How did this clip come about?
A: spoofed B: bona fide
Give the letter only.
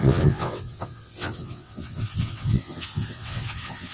A